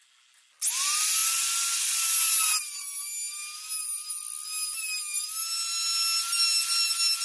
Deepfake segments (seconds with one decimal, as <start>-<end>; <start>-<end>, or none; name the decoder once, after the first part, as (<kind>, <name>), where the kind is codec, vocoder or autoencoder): none